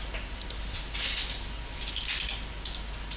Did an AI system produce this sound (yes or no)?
no